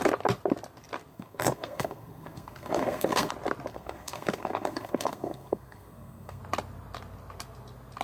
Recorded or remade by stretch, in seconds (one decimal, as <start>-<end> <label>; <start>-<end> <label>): 0.0-1.1 recorded; 1.1-3.3 remade; 3.3-3.7 recorded; 3.7-6.4 remade; 6.4-8.0 recorded